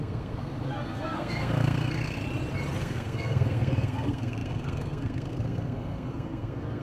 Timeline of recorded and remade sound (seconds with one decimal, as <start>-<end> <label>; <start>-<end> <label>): 0.0-2.2 remade; 2.2-2.8 recorded; 2.8-6.8 remade